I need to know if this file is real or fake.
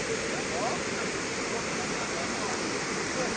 real